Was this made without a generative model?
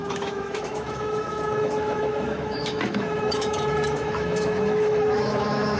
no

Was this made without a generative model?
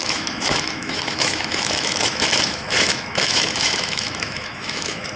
no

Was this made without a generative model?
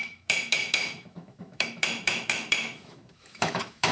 no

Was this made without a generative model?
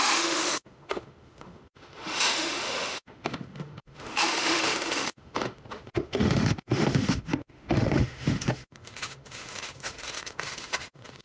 no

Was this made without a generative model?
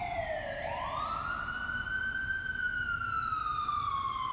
yes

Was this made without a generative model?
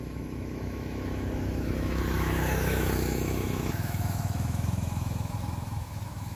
no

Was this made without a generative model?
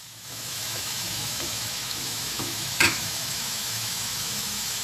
no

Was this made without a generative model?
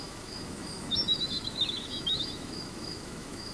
no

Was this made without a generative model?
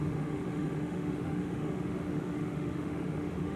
no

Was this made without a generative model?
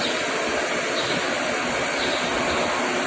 yes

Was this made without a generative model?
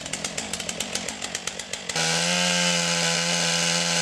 yes